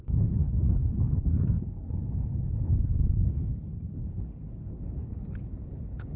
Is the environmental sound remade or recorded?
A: remade